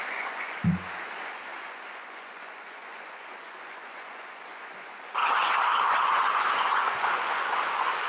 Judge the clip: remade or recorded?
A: remade